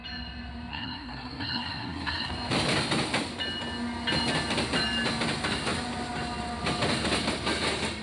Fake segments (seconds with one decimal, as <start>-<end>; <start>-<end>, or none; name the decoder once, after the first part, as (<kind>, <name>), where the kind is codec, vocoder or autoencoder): 0.7-2.3 (codec, SNAC)